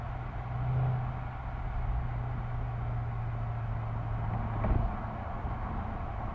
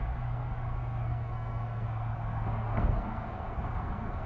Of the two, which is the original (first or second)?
first